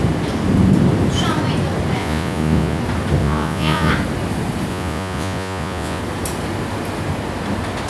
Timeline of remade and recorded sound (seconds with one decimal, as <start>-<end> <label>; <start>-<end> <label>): 0.0-2.0 recorded; 2.0-2.8 remade; 2.8-3.2 recorded; 3.2-3.9 remade; 3.9-4.7 recorded; 4.7-6.0 remade; 6.0-7.9 recorded